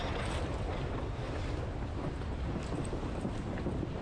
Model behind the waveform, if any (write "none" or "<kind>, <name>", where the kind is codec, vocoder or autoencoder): vocoder, BigVGAN v2